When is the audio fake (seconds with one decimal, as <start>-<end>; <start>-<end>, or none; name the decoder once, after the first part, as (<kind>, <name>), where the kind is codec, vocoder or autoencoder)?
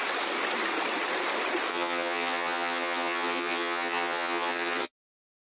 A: 1.7-4.9 (vocoder, HiFi-GAN)